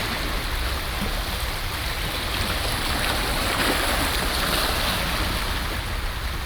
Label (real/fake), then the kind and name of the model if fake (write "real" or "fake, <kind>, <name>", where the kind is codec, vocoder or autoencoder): real